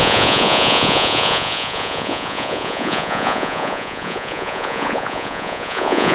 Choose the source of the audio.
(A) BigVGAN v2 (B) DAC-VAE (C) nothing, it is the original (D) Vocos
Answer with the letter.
D